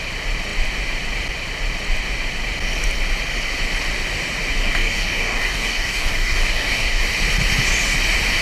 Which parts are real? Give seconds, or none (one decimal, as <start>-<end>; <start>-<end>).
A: 0.0-4.6; 7.0-8.4